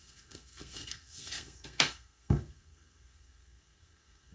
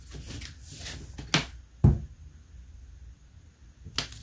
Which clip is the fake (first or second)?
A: first